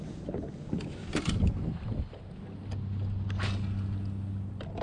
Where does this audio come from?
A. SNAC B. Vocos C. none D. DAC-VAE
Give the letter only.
C